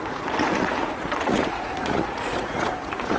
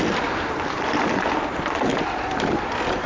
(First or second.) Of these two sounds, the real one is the second